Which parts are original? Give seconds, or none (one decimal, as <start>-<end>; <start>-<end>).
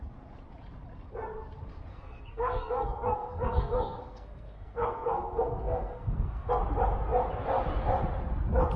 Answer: 0.0-1.9; 6.5-8.8